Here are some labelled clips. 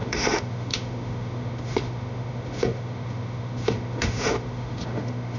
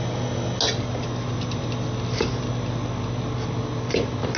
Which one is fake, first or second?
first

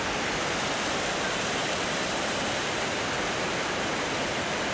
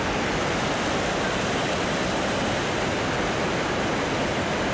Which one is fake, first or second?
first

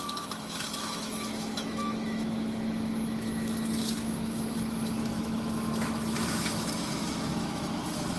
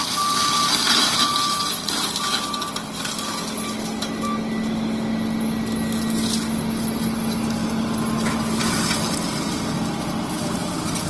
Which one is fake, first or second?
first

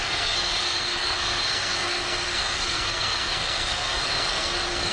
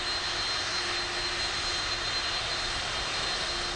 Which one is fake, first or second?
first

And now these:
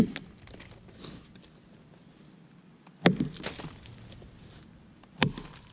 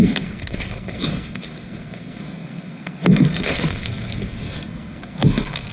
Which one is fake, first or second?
second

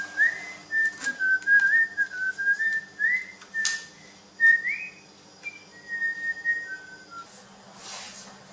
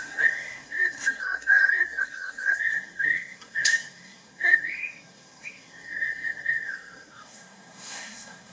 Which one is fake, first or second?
second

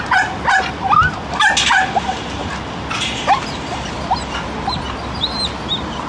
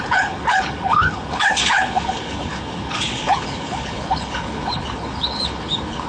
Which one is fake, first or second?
second